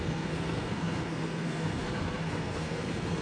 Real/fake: fake